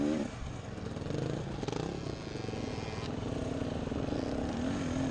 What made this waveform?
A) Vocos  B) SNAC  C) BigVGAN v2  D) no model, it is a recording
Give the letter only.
D